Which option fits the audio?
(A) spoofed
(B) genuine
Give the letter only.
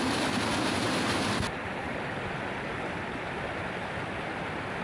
B